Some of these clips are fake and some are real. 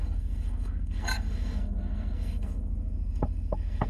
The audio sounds fake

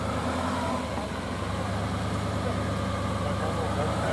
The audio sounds real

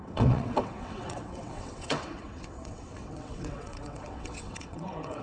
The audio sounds fake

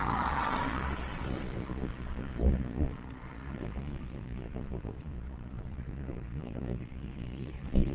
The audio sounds fake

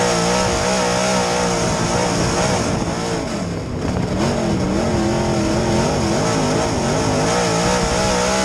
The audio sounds real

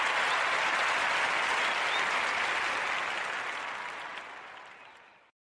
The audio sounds real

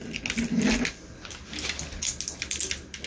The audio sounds real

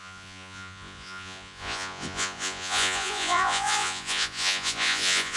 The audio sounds fake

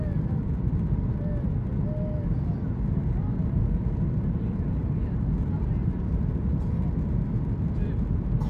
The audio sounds real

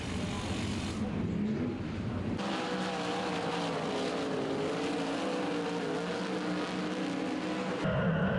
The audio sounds real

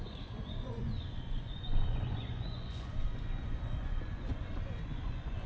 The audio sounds fake